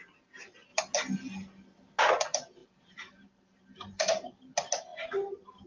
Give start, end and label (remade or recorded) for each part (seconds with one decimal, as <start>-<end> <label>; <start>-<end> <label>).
0.0-2.6 recorded; 2.6-4.4 remade; 4.4-5.7 recorded